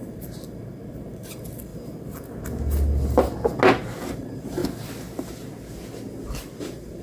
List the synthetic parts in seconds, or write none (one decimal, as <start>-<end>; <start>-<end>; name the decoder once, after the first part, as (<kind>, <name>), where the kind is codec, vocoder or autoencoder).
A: 0.0-1.7 (vocoder, BigVGAN v2); 4.1-4.6; 6.6-7.0